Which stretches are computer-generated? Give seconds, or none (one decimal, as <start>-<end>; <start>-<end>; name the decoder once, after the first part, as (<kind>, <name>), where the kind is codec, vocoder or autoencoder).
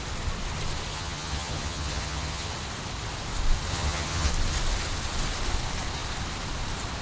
0.9-2.5 (vocoder, HiFi-GAN); 3.7-4.3